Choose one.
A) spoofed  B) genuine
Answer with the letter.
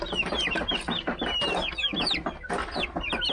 B